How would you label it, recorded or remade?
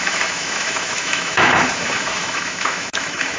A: remade